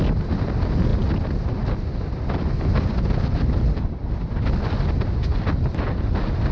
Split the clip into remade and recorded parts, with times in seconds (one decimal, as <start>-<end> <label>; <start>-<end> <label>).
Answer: 0.0-6.5 recorded